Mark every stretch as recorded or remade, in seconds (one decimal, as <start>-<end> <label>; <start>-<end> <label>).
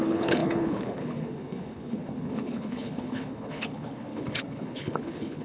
0.0-5.4 remade